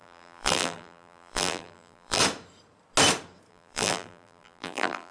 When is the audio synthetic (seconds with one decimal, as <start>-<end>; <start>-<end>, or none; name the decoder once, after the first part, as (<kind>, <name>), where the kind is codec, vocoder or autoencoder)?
0.0-2.2 (vocoder, BigVGAN v2); 3.5-5.1